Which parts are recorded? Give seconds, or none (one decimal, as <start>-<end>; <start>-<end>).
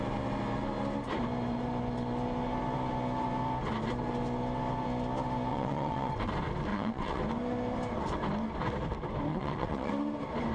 0.0-5.5; 6.3-6.7; 7.2-9.3; 9.9-10.5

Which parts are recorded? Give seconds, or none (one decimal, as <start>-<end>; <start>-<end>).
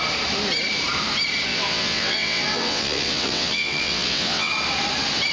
0.0-1.5; 4.5-5.3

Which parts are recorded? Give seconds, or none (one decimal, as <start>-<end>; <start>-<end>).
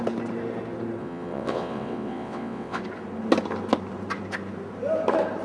0.0-1.0; 2.8-5.4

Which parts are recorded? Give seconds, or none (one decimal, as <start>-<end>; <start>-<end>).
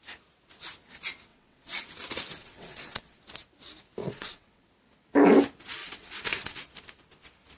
0.0-1.3; 1.8-2.4; 3.2-4.0; 4.7-5.8; 6.6-7.6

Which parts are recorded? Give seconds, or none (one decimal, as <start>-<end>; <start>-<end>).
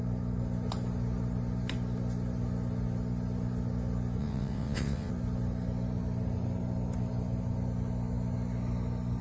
0.0-4.2; 5.1-9.2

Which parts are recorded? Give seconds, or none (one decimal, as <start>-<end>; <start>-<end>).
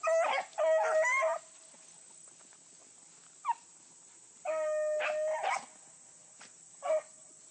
0.0-7.5